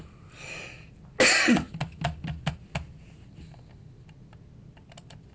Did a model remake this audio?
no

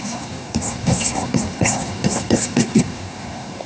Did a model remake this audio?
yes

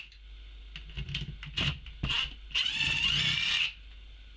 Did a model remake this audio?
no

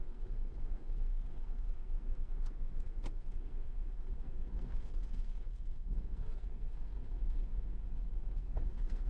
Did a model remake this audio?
yes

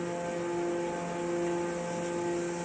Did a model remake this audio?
no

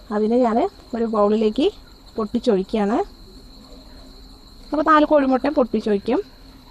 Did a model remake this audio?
yes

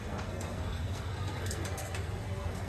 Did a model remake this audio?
yes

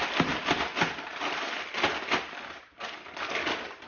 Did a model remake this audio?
no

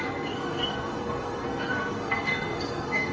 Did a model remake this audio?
yes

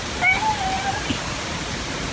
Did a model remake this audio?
no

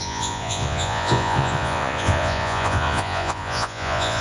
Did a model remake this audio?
yes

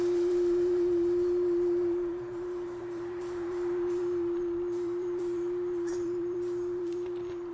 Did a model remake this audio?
yes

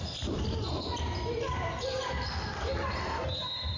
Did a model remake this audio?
no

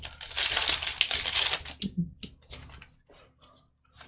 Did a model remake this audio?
no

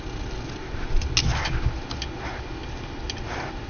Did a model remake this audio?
no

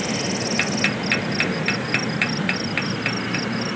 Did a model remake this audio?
no